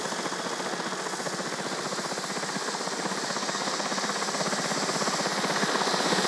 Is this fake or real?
real